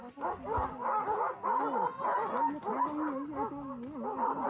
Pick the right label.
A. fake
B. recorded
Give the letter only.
B